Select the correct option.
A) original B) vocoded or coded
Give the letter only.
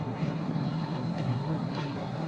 B